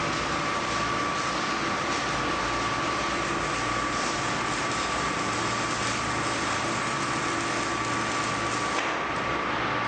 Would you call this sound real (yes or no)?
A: yes